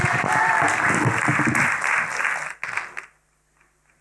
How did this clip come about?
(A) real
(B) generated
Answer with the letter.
A